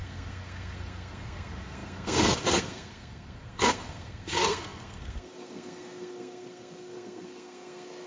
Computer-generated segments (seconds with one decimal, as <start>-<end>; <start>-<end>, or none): 0.0-8.1